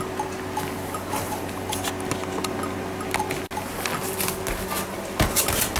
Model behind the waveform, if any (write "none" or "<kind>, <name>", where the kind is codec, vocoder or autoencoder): none